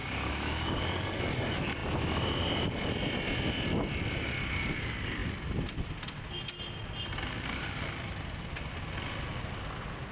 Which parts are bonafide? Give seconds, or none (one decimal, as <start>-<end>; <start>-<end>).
0.9-10.1